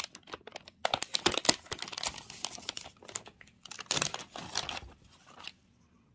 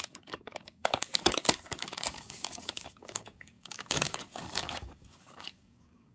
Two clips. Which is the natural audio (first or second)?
first